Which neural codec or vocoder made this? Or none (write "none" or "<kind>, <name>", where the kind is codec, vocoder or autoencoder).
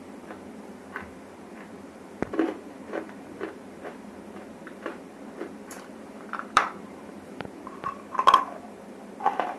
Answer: vocoder, BigVGAN v2